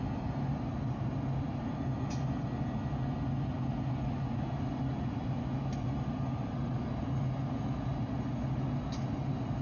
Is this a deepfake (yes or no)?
no